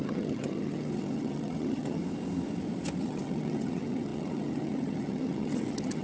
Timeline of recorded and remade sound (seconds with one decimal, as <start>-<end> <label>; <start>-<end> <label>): 0.0-2.0 remade; 2.0-3.0 recorded; 3.0-6.0 remade